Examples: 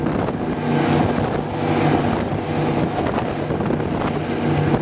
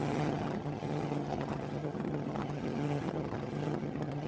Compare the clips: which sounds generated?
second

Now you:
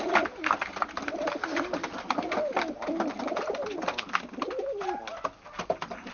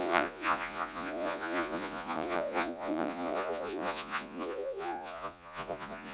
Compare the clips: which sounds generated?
second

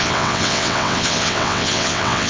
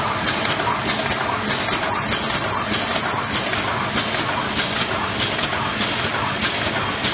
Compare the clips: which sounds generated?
first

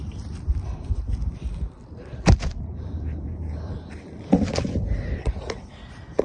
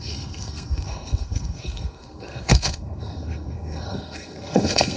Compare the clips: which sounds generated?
second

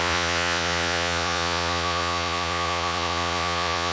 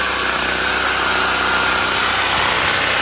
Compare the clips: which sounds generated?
first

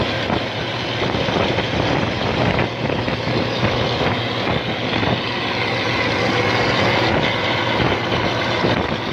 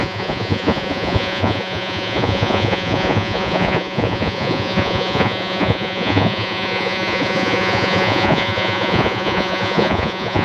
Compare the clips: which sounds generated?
second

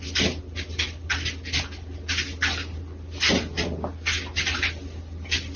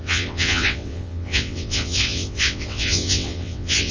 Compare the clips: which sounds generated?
second